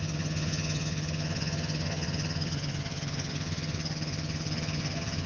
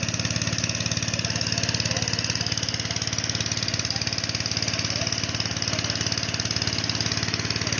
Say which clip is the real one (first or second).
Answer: second